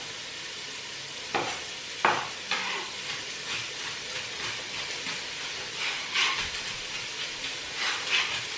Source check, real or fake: real